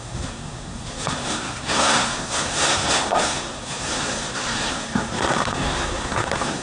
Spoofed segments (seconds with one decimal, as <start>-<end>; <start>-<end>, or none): 0.0-6.6